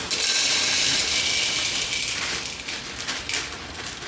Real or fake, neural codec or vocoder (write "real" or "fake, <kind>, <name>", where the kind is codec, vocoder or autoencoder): real